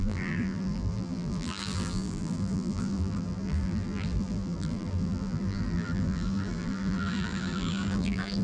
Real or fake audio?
fake